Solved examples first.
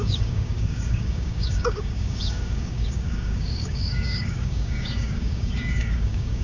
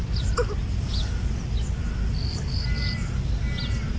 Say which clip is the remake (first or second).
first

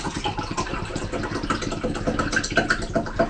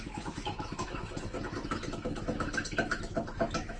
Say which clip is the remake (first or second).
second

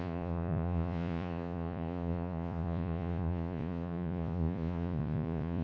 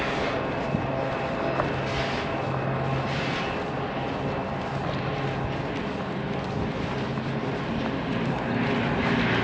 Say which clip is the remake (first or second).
first